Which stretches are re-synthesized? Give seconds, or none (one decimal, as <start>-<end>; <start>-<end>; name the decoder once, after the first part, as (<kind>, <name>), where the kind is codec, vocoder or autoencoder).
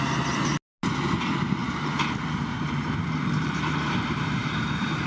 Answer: 1.6-5.1 (vocoder, BigVGAN v2)